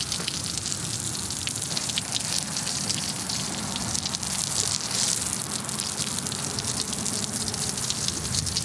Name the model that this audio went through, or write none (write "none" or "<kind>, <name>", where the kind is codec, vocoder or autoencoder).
none